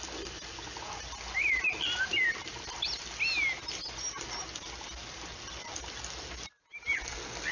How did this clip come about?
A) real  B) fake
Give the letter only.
A